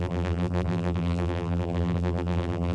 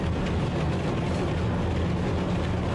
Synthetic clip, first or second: first